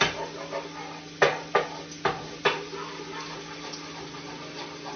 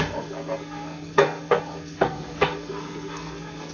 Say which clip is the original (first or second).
first